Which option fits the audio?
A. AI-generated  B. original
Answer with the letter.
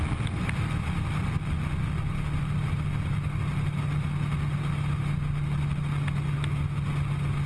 B